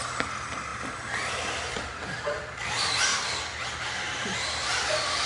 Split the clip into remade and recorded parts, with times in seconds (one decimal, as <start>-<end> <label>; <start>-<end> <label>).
0.0-5.3 recorded